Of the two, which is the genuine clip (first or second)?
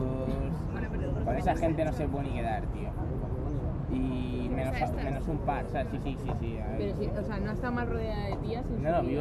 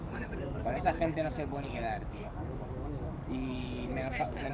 first